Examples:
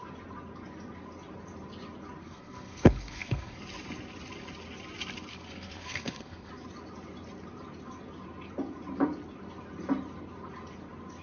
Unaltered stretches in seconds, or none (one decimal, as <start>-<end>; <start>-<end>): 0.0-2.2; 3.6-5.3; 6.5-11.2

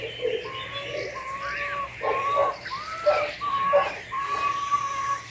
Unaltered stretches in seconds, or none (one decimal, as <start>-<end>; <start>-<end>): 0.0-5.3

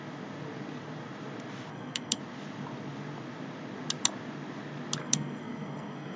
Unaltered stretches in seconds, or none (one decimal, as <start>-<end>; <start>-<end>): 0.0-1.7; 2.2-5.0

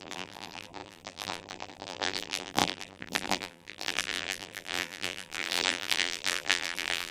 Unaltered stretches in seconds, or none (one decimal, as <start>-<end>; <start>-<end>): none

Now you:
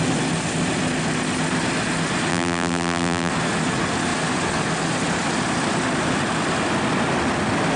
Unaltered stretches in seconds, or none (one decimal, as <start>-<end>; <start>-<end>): 0.0-2.3; 3.3-7.8